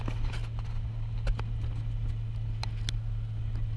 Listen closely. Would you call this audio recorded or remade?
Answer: recorded